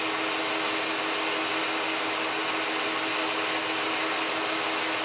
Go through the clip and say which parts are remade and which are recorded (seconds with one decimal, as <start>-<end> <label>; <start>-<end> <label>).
0.0-5.0 recorded

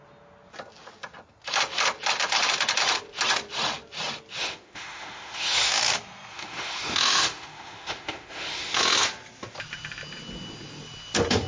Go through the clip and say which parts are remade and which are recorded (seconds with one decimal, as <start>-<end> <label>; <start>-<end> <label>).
0.0-4.4 recorded; 4.4-5.8 remade; 5.8-6.3 recorded; 6.3-8.8 remade; 8.8-11.5 recorded

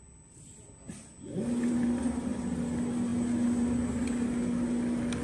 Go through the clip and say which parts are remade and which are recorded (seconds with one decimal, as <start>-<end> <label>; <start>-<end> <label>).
0.0-5.2 recorded

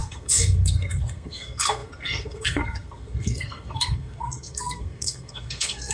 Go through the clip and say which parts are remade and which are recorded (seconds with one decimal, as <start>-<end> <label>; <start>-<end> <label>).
0.0-5.9 remade

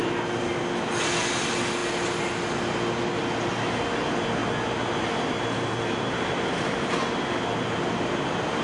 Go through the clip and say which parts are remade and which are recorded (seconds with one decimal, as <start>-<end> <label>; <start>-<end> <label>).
0.0-8.6 recorded

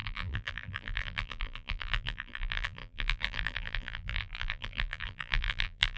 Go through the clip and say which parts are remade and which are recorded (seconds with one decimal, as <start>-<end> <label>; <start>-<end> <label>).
0.0-6.0 remade

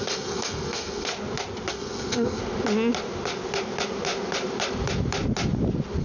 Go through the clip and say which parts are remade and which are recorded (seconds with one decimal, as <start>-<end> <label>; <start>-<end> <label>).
0.0-1.1 remade; 1.1-1.7 recorded; 1.7-2.4 remade; 2.4-6.0 recorded

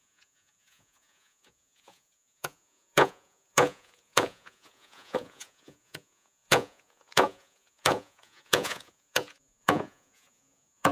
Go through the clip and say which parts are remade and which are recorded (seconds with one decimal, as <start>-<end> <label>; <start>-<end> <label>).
0.0-10.9 remade